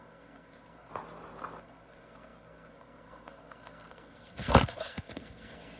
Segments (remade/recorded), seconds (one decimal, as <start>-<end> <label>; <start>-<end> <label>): 0.0-0.9 remade; 0.9-1.6 recorded; 1.6-5.8 remade